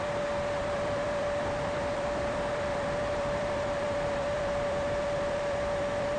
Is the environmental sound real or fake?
fake